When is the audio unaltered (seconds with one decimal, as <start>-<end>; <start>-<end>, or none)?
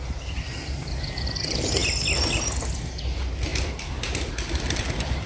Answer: 0.0-5.3